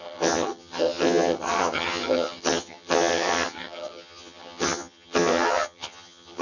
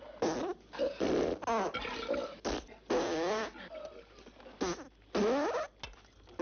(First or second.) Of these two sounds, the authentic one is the second